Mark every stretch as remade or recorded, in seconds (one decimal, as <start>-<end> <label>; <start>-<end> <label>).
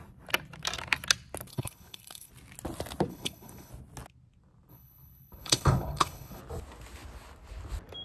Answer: 0.0-1.5 recorded; 1.5-2.3 remade; 2.3-3.1 recorded; 3.1-3.7 remade; 3.7-4.7 recorded; 4.7-6.4 remade; 6.4-8.0 recorded